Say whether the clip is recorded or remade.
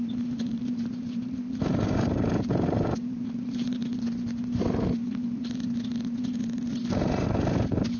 remade